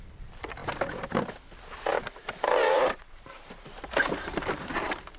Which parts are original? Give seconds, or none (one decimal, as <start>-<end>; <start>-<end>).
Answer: 0.0-1.9; 4.7-5.2